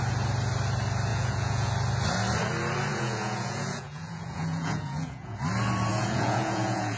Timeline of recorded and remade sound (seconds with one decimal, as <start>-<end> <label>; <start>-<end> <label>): 0.0-1.1 recorded; 1.1-1.7 remade; 1.7-2.9 recorded; 2.9-5.4 remade; 5.4-5.9 recorded; 5.9-7.0 remade